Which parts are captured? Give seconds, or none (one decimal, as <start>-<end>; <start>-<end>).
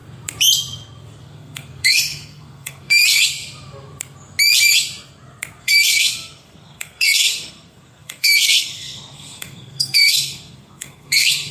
0.0-1.2; 3.0-5.6